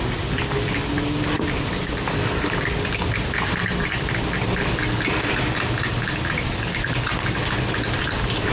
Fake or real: real